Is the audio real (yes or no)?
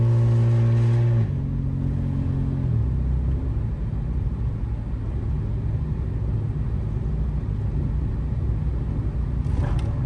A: yes